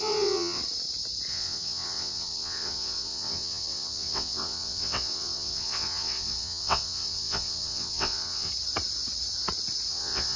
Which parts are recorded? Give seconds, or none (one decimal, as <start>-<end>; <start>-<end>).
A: 0.6-1.3; 8.5-9.9

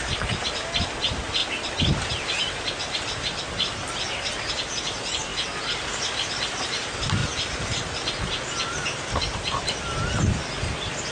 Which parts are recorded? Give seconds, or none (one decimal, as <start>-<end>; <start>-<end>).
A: 0.0-11.1

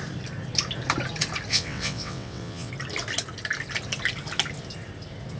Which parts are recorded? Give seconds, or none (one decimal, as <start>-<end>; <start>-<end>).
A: 0.0-1.5; 2.7-5.4

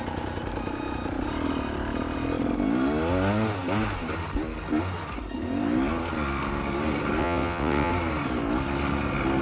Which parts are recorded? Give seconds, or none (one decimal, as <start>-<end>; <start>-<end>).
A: 0.0-7.2; 7.9-9.4

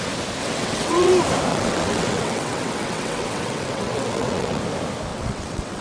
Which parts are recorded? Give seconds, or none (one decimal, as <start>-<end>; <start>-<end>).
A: 0.0-0.4; 1.1-1.5; 4.6-5.1